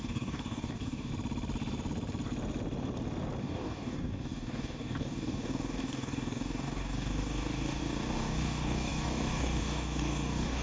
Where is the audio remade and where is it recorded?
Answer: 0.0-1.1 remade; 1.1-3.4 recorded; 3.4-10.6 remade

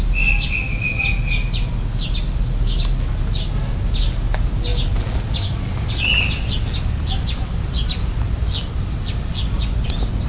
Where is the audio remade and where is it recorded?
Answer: 0.0-10.3 recorded

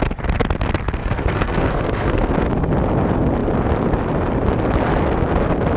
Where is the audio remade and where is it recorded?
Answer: 0.0-1.0 recorded; 1.0-2.3 remade; 2.3-5.8 recorded